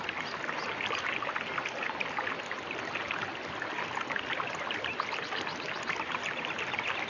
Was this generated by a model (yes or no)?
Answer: no